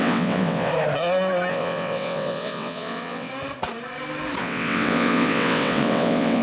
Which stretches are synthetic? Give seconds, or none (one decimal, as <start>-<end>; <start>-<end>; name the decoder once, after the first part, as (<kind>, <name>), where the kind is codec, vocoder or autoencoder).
0.0-0.7 (vocoder, WaveNeXt); 1.5-3.3; 4.4-6.4